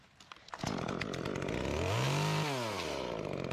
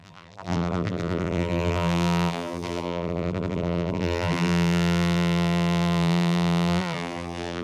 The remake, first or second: second